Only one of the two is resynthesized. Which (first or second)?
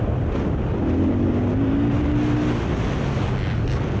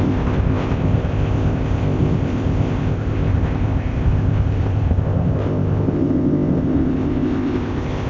second